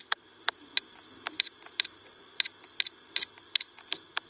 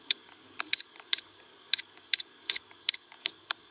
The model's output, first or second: second